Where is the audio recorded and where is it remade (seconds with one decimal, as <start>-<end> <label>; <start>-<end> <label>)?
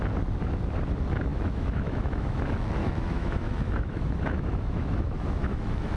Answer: 0.0-1.3 recorded; 1.3-2.4 remade; 2.4-2.8 recorded; 2.8-6.0 remade